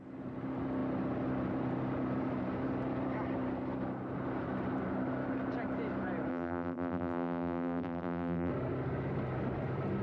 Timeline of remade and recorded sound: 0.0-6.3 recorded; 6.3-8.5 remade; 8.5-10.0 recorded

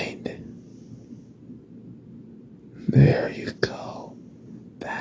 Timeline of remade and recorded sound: 0.0-5.0 recorded

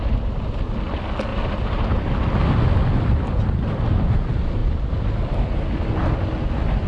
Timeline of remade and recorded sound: 0.0-1.3 recorded; 1.3-2.0 remade; 2.0-4.6 recorded; 4.6-5.3 remade; 5.3-6.9 recorded

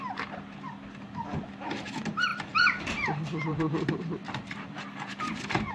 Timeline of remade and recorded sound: 0.0-2.3 recorded; 2.3-5.7 remade

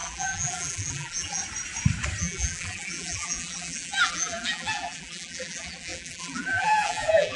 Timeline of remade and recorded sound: 0.0-1.4 remade; 1.4-2.2 recorded; 2.2-7.4 remade

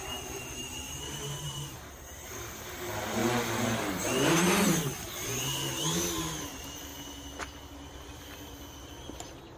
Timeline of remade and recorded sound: 0.0-3.2 remade; 3.2-6.4 recorded; 6.4-6.9 remade; 6.9-9.2 recorded; 9.2-9.6 remade

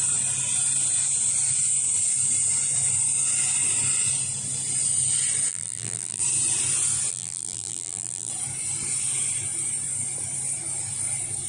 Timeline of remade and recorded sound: 0.0-5.5 recorded; 5.5-6.2 remade; 6.2-7.1 recorded; 7.1-8.3 remade; 8.3-11.5 recorded

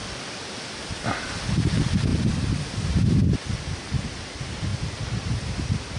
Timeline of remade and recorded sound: 0.0-0.5 remade; 0.5-2.1 recorded; 2.1-2.6 remade; 2.6-4.7 recorded; 4.7-6.0 remade